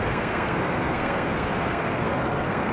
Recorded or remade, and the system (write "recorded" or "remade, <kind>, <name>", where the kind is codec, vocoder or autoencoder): remade, codec, SNAC